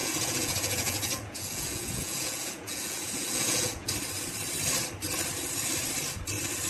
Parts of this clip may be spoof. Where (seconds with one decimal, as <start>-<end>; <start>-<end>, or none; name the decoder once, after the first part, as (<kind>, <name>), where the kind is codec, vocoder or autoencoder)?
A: 0.0-3.9 (vocoder, Vocos)